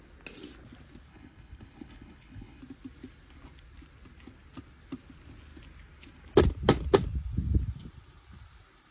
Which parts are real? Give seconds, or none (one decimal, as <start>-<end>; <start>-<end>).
0.0-1.1; 2.6-8.9